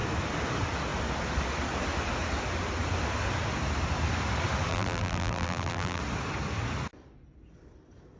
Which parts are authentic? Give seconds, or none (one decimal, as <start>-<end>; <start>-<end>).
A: 0.0-4.7; 6.0-8.2